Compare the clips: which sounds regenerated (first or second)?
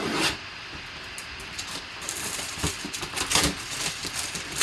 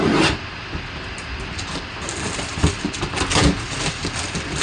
first